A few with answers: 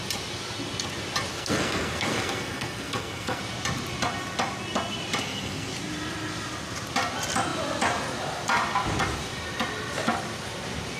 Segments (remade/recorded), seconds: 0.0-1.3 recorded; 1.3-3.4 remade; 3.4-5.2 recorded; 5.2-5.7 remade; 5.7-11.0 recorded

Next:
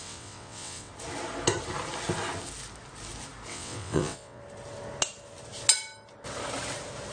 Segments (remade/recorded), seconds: 0.0-0.9 remade; 0.9-3.5 recorded; 3.5-4.4 remade; 4.4-7.1 recorded

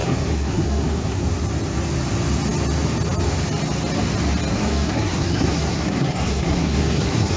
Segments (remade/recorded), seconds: 0.0-1.2 remade; 1.2-4.5 recorded; 4.5-7.4 remade

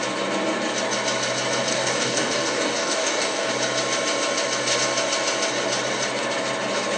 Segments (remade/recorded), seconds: 0.0-1.7 recorded; 1.7-3.5 remade; 3.5-7.0 recorded

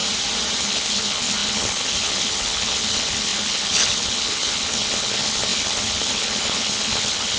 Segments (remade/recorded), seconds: 0.0-0.6 recorded; 0.6-7.4 remade